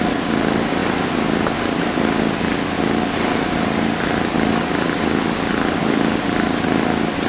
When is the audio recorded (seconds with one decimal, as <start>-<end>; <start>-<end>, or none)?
0.0-7.3